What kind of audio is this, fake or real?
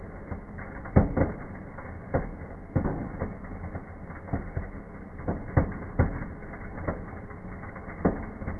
real